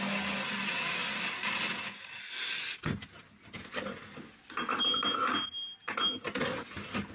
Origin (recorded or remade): recorded